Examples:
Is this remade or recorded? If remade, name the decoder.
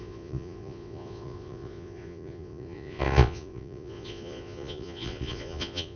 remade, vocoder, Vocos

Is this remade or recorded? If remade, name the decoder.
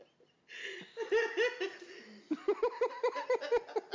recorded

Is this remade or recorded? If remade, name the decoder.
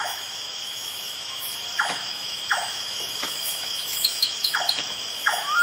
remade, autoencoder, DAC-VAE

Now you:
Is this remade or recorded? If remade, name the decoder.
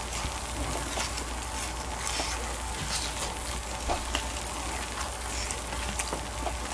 recorded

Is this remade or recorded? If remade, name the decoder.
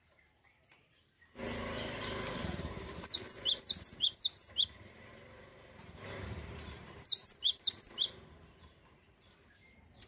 remade, vocoder, BigVGAN v2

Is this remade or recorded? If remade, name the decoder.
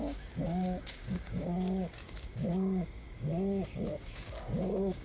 remade, codec, DAC